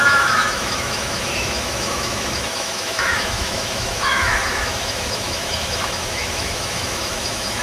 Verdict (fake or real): fake